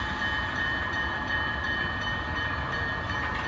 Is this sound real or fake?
fake